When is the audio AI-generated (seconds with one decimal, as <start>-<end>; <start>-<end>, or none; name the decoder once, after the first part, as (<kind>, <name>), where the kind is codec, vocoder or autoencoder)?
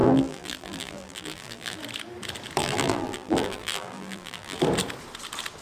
0.0-1.8 (vocoder, BigVGAN v2); 2.6-4.6